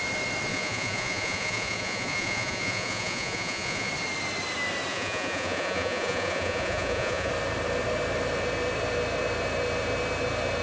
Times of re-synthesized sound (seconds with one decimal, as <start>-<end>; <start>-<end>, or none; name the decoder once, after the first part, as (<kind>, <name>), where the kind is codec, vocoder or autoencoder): 0.5-3.9 (vocoder, Vocos); 4.9-7.3